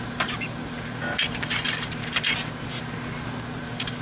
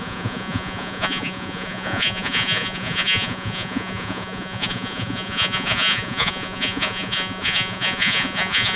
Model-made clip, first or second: second